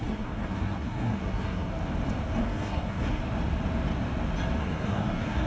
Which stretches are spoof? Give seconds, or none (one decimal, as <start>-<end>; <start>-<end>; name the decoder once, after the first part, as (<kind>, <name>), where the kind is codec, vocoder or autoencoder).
0.0-1.7 (codec, SNAC); 2.4-3.2; 4.6-5.5